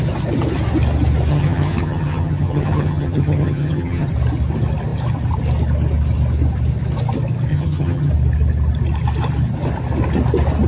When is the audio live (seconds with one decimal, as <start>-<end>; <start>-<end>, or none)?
0.0-1.3; 4.1-7.5; 8.1-10.7